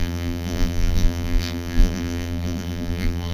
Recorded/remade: remade